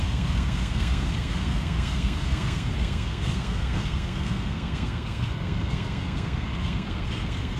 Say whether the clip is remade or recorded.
remade